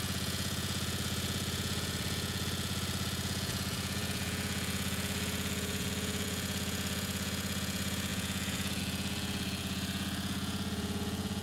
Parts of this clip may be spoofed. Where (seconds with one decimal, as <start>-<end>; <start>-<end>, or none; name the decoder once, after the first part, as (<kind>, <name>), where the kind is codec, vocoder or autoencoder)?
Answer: 0.0-11.4 (vocoder, Vocos)